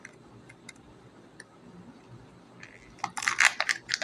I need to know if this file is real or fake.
real